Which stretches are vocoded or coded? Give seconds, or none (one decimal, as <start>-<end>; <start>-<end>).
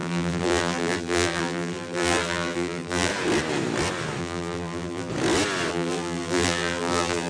0.0-3.1; 4.2-5.1; 5.7-7.3